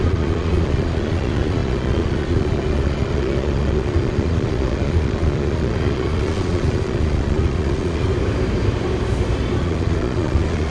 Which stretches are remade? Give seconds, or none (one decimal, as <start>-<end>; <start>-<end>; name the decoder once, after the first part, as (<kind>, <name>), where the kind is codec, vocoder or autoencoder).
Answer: 0.0-8.1 (vocoder, Vocos); 9.6-10.7